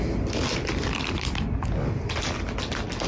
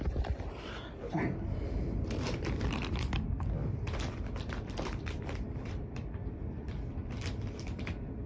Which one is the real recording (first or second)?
first